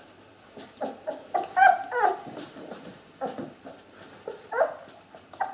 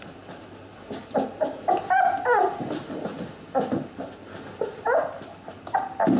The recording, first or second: second